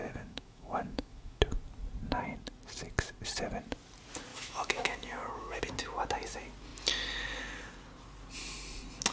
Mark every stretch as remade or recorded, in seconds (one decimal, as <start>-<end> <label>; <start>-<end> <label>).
0.0-1.4 remade; 1.4-4.3 recorded; 4.3-5.6 remade; 5.6-9.1 recorded